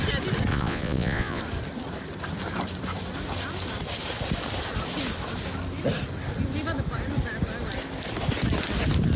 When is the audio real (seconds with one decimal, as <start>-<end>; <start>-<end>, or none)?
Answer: 0.0-0.5; 1.4-9.2